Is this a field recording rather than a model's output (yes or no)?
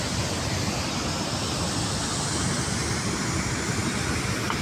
yes